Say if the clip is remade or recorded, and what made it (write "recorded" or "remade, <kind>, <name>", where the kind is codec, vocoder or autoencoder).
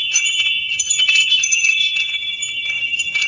remade, vocoder, HiFi-GAN